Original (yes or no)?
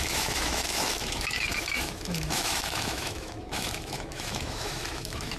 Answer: no